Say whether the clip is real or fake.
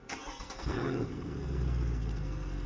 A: fake